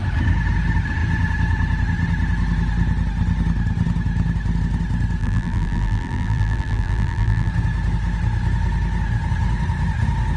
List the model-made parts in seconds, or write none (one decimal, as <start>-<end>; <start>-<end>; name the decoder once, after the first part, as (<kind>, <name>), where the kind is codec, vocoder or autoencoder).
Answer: 5.2-7.5 (vocoder, BigVGAN v2)